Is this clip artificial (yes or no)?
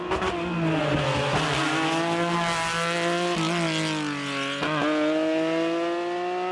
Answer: no